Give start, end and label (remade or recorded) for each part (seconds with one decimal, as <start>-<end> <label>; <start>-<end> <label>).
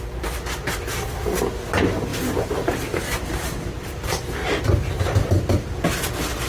0.0-2.1 recorded; 2.1-6.0 remade; 6.0-6.5 recorded